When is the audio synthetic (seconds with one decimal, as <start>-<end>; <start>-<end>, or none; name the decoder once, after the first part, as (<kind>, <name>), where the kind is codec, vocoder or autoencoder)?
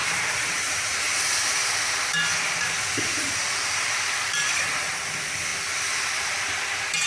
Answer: 0.0-1.0 (vocoder, BigVGAN v2); 3.2-4.9